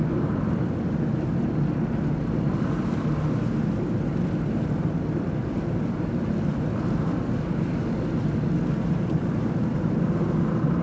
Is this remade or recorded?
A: recorded